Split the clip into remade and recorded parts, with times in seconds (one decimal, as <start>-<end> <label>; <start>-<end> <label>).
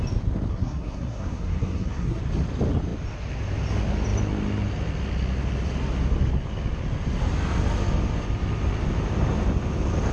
0.0-0.5 recorded; 0.5-2.2 remade; 2.2-10.1 recorded